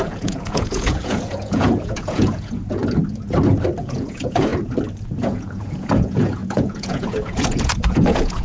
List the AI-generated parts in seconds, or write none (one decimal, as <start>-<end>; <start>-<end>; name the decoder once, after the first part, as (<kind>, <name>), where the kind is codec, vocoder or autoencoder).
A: 0.0-2.8 (vocoder, Vocos); 3.8-4.5; 5.2-8.4